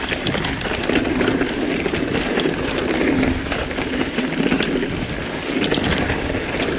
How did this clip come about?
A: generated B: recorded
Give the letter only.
B